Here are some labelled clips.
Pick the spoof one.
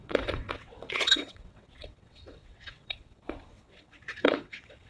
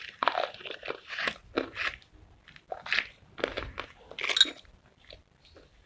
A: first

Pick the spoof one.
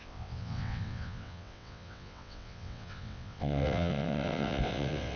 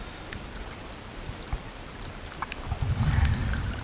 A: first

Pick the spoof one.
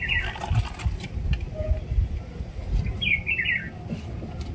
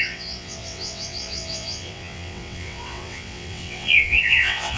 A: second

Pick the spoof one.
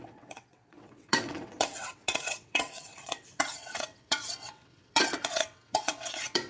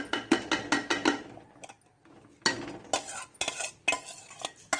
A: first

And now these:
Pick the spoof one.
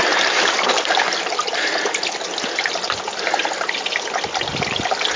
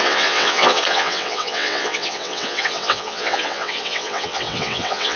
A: second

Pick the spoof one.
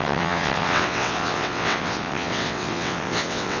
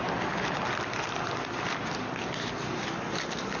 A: first